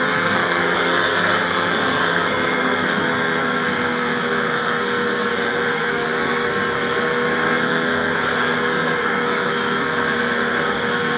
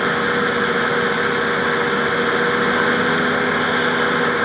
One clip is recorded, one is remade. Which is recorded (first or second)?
second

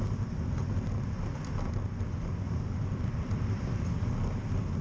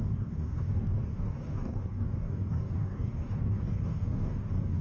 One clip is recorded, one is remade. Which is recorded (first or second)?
first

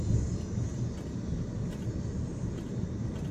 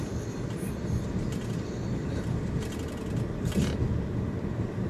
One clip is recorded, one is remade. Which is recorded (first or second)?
first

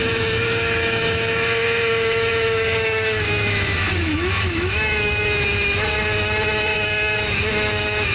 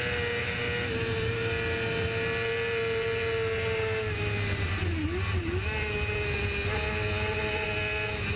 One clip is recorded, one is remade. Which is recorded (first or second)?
second